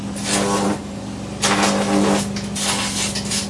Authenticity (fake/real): real